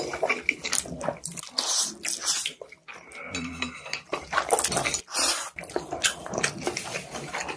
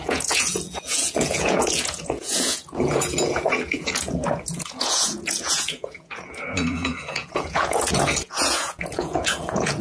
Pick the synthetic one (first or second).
second